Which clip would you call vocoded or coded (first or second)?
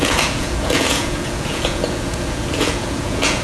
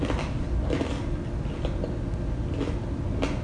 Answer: first